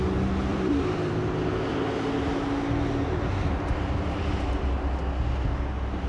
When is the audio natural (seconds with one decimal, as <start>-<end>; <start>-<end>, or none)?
0.0-0.5; 1.7-6.1